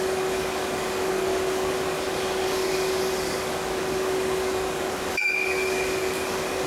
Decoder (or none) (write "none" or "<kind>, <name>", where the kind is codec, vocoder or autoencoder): codec, DAC